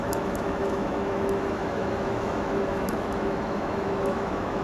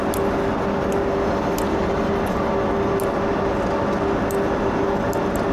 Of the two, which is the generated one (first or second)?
first